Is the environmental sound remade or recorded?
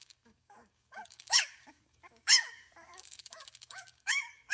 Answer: remade